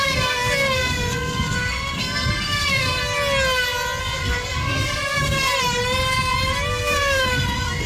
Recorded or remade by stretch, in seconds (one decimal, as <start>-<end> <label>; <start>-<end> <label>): 0.0-3.0 remade; 3.0-4.0 recorded; 4.0-5.5 remade; 5.5-6.7 recorded; 6.7-7.9 remade

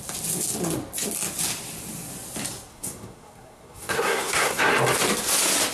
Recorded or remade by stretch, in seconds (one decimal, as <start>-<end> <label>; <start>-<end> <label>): 0.0-2.7 recorded; 2.7-4.7 remade; 4.7-5.7 recorded

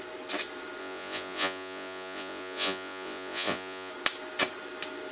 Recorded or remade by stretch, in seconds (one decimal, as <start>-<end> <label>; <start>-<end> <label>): 0.0-0.8 recorded; 0.8-3.9 remade; 3.9-5.1 recorded

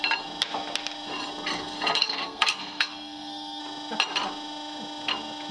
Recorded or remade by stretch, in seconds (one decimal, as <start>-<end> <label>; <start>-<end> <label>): 0.0-2.0 recorded; 2.0-3.6 remade; 3.6-5.5 recorded

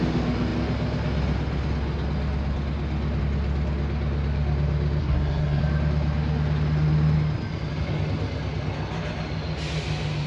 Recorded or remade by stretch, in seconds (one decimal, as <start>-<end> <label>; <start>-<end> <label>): 0.0-5.0 recorded; 5.0-5.6 remade; 5.6-10.3 recorded

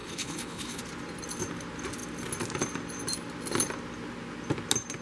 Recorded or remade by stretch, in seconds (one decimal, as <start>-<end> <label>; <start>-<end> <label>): 0.0-0.8 remade; 0.8-5.0 recorded